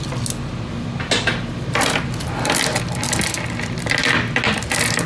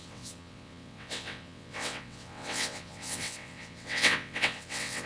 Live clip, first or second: first